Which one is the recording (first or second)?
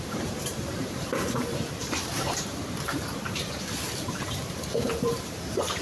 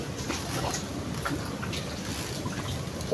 second